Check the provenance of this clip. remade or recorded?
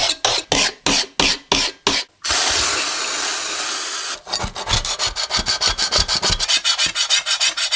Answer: recorded